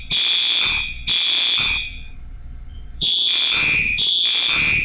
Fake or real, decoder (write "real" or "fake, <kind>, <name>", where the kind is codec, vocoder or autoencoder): fake, vocoder, BigVGAN v2